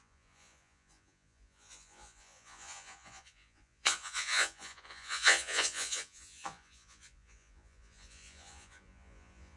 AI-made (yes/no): yes